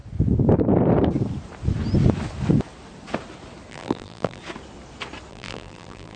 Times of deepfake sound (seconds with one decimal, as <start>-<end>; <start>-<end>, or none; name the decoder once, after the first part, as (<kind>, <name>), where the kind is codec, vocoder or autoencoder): 3.7-4.4 (vocoder, BigVGAN v2); 5.3-6.2